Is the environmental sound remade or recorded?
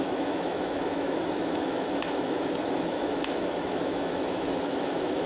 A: remade